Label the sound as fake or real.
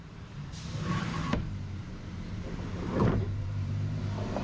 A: fake